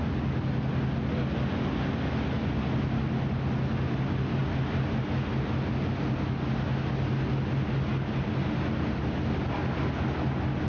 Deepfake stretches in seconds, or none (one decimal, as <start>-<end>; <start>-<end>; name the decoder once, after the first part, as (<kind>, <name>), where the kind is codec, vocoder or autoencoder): none